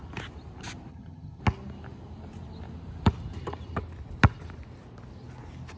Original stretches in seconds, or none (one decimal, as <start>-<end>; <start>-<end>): 0.0-0.9; 1.4-5.8